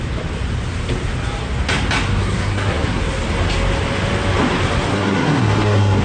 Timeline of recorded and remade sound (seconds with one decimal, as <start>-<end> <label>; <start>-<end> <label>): 0.0-2.2 recorded; 2.2-3.0 remade; 3.0-4.9 recorded; 4.9-6.0 remade